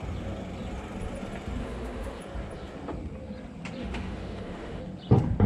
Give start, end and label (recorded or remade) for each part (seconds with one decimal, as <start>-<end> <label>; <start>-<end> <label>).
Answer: 0.0-1.6 recorded; 1.6-2.2 remade; 2.2-3.8 recorded; 3.8-4.8 remade; 4.8-5.5 recorded